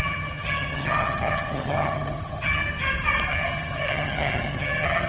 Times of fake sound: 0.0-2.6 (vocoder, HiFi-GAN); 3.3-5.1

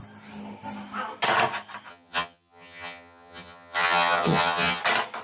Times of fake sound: 1.9-4.8 (vocoder, HiFi-GAN)